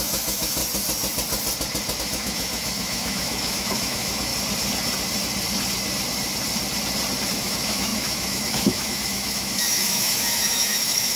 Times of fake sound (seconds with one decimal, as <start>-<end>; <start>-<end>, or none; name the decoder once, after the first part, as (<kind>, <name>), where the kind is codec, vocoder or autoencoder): 0.0-0.6 (autoencoder, DAC-VAE); 2.0-4.3; 7.4-11.2